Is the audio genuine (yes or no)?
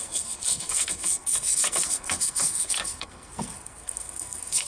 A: no